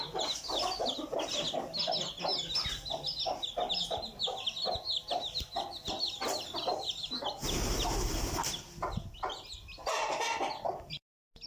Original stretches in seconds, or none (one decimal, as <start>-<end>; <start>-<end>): 0.0-11.5